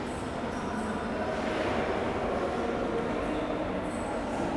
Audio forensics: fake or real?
real